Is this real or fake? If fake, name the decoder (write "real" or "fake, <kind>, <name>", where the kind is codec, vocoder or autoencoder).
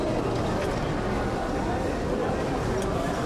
real